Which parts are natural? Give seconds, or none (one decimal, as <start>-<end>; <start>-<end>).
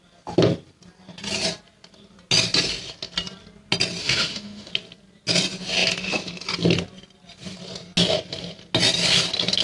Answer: 0.0-4.0; 4.7-9.6